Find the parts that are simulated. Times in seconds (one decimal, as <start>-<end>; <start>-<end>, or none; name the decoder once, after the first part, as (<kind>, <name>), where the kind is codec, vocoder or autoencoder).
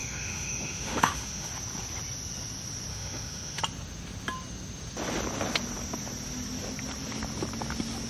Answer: 0.0-1.5 (autoencoder, DAC-VAE); 2.9-3.6